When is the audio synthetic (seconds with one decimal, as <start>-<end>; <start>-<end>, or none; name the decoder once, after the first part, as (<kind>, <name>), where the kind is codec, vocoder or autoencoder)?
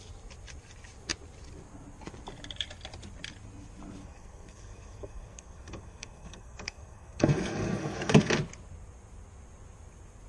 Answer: 4.0-8.3 (codec, SNAC)